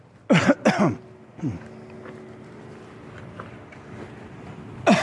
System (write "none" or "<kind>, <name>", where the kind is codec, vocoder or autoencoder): none